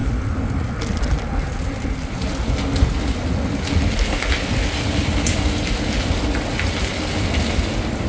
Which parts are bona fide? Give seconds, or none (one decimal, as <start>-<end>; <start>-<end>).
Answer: 0.0-8.1